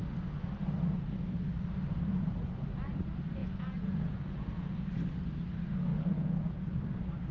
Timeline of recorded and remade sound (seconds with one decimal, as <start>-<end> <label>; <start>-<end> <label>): 0.0-2.1 recorded; 2.1-2.6 remade; 2.6-3.4 recorded; 3.4-4.7 remade; 4.7-5.9 recorded; 5.9-6.8 remade; 6.8-7.3 recorded